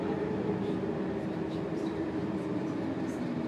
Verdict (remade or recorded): recorded